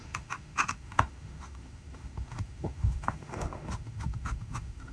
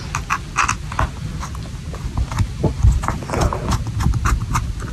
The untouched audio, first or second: second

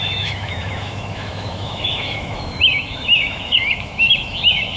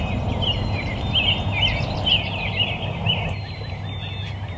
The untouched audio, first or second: second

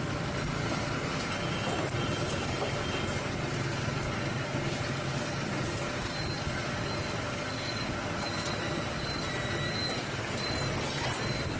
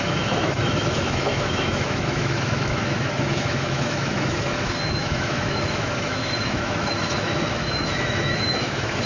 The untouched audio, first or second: first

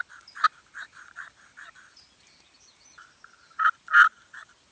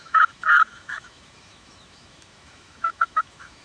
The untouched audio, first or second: first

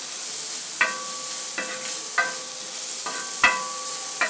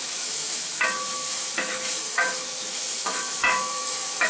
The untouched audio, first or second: first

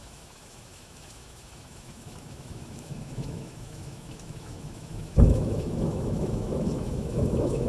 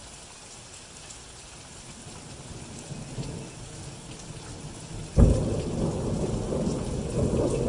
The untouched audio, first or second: second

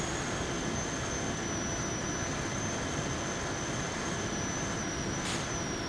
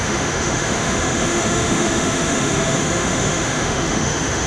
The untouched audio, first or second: first